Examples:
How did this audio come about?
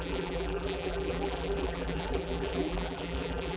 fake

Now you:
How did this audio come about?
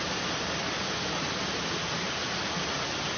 real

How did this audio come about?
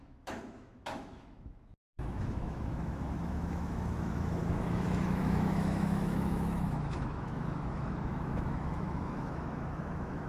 fake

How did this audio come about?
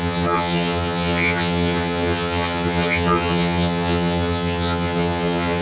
fake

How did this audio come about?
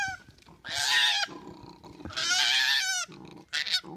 real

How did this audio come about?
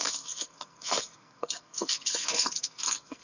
fake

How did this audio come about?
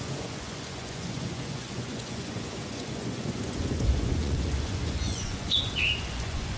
fake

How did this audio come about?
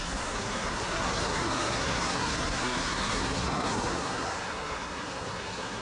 fake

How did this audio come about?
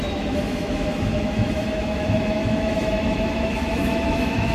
fake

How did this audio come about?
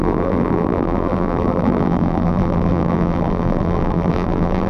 fake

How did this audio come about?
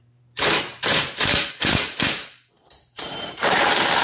fake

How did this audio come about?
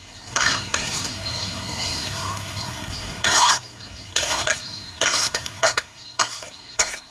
fake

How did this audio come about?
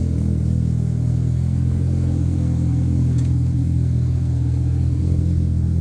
fake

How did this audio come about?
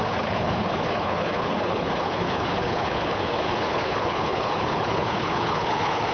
fake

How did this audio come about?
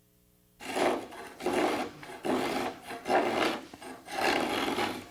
real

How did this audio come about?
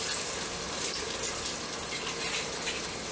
real